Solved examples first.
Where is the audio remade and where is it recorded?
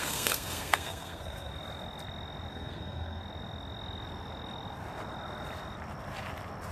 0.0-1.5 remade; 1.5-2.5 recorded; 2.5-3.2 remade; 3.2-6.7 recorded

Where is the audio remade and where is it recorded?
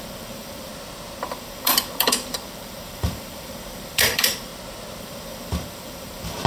0.0-0.7 remade; 0.7-1.2 recorded; 1.2-4.5 remade; 4.5-5.0 recorded; 5.0-6.5 remade